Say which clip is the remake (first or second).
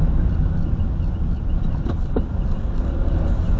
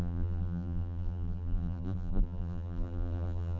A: second